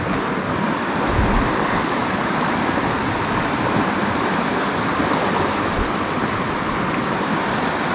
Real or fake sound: real